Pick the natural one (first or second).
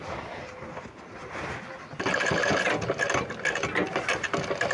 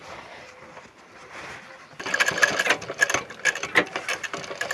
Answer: first